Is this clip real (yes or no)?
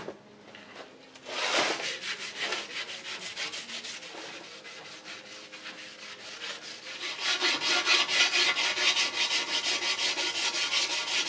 yes